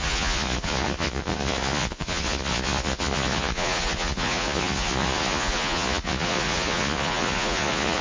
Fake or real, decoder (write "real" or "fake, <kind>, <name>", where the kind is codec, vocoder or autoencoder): fake, vocoder, Vocos